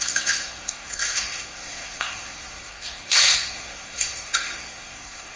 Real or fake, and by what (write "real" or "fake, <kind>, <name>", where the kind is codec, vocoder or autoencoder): fake, codec, SNAC